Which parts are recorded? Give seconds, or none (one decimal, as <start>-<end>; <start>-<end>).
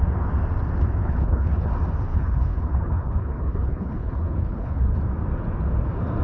0.0-1.0; 1.7-2.1; 5.0-6.2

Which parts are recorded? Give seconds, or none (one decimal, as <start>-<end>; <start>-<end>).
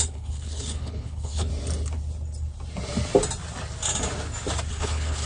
1.5-4.7